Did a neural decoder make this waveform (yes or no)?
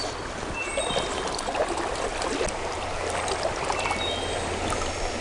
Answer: no